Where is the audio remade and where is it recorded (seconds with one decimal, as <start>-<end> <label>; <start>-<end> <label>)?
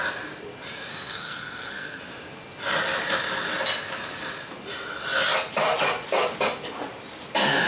0.0-0.9 recorded; 0.9-2.0 remade; 2.0-7.7 recorded